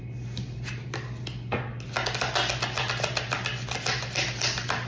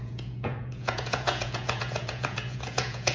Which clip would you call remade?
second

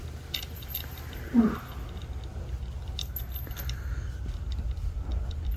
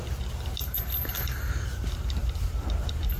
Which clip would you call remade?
second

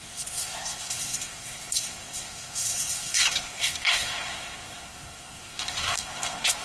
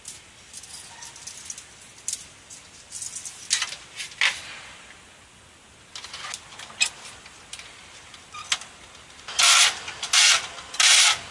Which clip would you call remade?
first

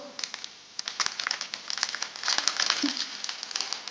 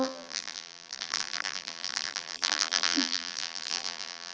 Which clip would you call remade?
second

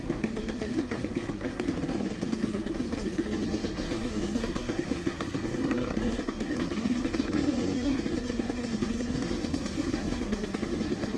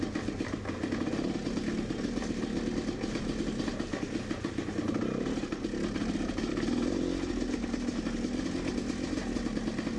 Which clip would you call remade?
first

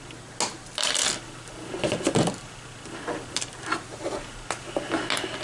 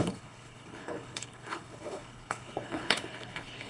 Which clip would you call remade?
second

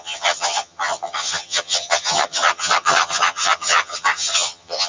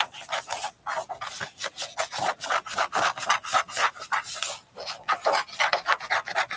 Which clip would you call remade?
first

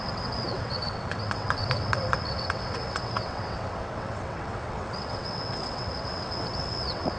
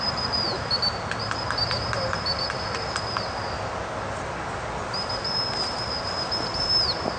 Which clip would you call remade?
first